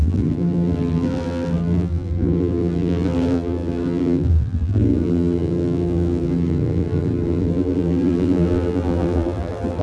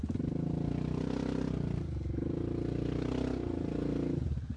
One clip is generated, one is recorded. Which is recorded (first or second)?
second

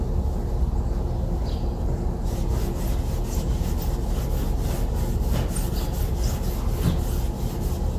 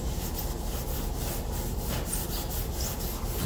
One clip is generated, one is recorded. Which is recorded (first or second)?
first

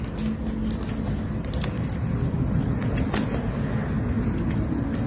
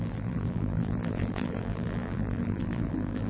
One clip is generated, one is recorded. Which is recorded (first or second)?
first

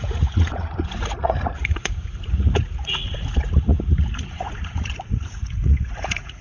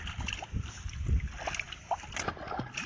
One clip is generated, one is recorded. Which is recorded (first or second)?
second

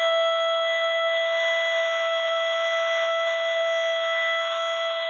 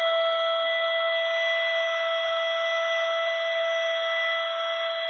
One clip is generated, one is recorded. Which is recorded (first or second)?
second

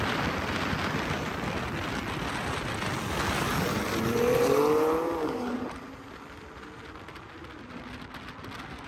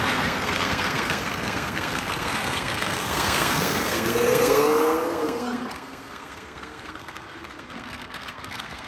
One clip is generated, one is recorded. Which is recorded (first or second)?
first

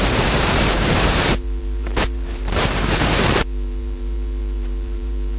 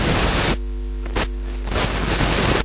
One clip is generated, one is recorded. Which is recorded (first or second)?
second